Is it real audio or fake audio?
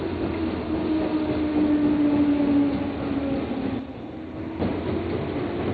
real